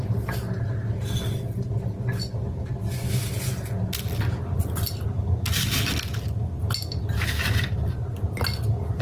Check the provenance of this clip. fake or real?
real